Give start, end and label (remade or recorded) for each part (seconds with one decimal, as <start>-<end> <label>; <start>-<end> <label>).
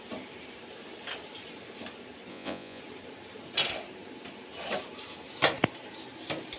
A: 0.0-2.3 recorded; 2.3-2.8 remade; 2.8-6.6 recorded